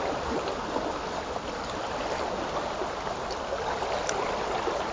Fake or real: real